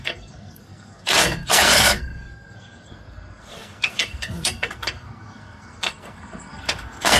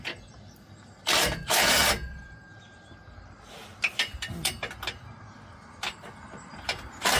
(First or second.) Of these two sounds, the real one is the second